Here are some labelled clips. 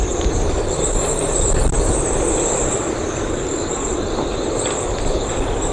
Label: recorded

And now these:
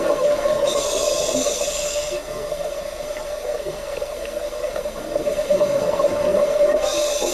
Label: remade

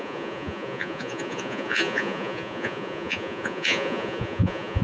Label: remade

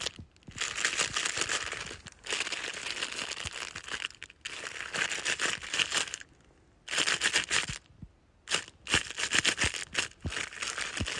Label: recorded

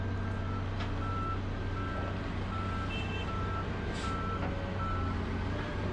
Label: recorded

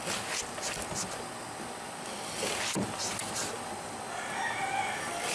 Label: recorded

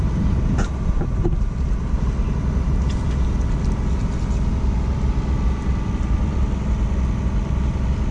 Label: recorded